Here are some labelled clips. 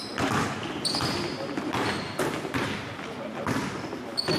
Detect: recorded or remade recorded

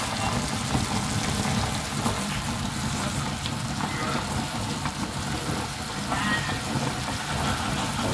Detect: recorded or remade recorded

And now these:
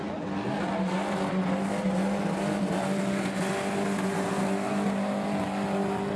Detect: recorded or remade recorded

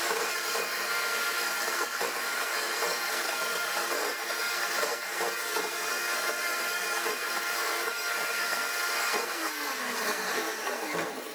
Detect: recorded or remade remade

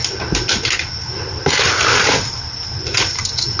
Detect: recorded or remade recorded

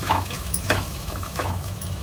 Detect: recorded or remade remade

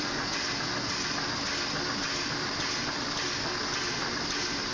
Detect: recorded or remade recorded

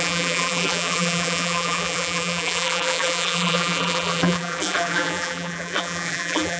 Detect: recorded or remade remade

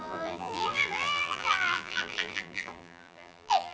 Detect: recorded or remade remade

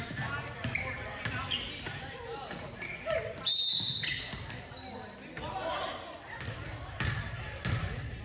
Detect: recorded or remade recorded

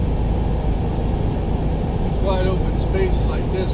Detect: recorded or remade recorded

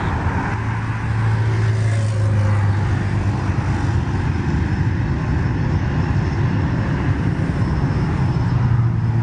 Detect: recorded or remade recorded